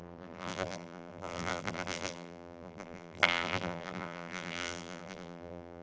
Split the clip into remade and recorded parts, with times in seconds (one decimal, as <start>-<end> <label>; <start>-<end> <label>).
0.0-5.8 remade